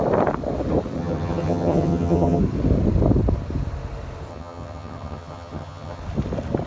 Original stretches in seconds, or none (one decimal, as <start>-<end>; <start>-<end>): 0.0-1.0; 2.4-4.3; 6.0-6.7